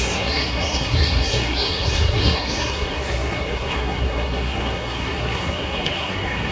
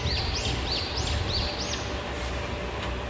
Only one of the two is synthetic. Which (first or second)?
first